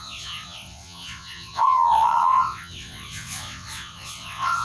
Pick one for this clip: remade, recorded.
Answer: remade